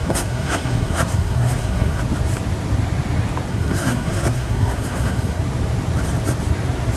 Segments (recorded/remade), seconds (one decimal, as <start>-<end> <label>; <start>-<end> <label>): 0.0-2.0 remade; 2.0-3.5 recorded; 3.5-5.4 remade; 5.4-7.0 recorded